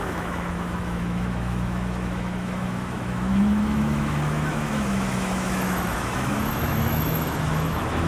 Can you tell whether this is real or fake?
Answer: fake